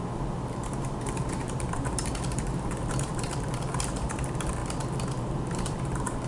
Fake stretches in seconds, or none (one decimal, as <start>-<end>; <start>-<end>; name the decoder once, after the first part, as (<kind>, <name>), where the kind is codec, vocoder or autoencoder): 0.0-4.6 (vocoder, BigVGAN v2); 5.2-6.3